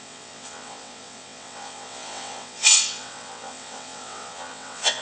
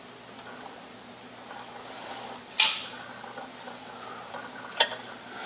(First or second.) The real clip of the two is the second